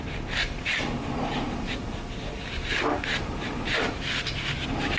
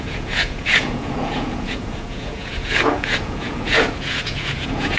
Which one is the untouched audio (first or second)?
first